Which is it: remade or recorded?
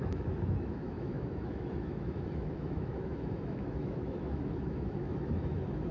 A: remade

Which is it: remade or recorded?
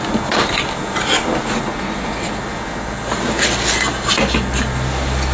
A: recorded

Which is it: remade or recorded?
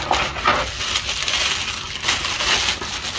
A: recorded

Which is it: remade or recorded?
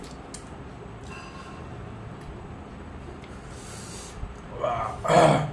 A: recorded